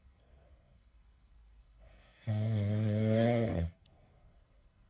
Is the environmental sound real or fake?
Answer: fake